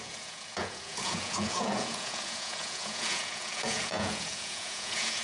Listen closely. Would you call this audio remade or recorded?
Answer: remade